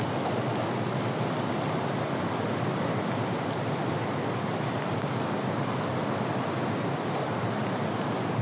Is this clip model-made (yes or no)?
no